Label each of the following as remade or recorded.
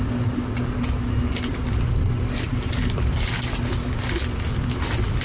recorded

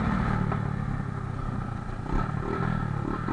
recorded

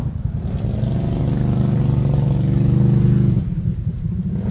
recorded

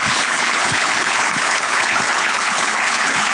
remade